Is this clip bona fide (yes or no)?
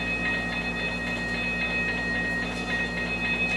yes